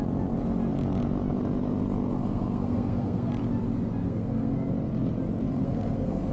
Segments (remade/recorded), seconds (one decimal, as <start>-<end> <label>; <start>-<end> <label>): 0.0-2.1 recorded; 2.1-3.3 remade; 3.3-4.0 recorded; 4.0-4.7 remade; 4.7-5.6 recorded; 5.6-6.3 remade